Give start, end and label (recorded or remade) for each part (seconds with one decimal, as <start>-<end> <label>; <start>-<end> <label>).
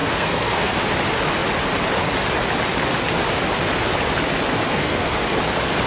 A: 0.0-0.7 remade; 0.7-4.5 recorded; 4.5-5.2 remade; 5.2-5.9 recorded